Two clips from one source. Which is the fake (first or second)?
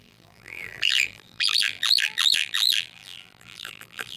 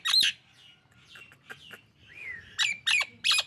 first